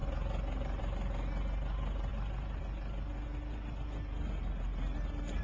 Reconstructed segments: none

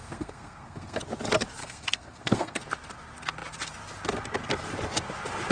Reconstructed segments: 0.0-1.0 (codec, SNAC); 1.6-2.6

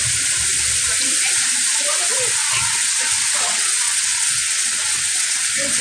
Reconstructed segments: 2.4-5.8 (vocoder, WaveNeXt)

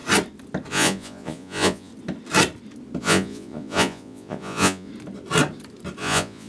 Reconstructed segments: 0.7-1.9 (vocoder, Vocos); 3.0-4.9; 6.0-6.5

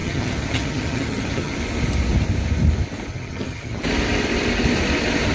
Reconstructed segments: 0.0-1.6 (vocoder, HiFi-GAN); 3.1-3.8

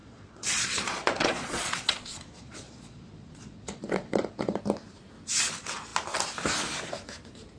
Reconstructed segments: 0.0-4.6 (vocoder, Vocos)

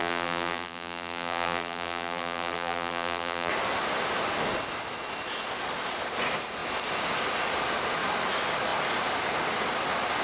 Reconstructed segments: 0.0-3.5 (vocoder, BigVGAN v2)

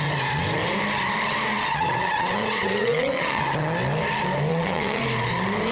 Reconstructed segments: 1.5-3.5 (vocoder, WaveNeXt); 4.5-5.0